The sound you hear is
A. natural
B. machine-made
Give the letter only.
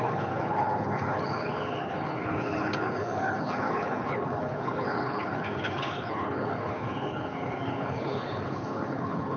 B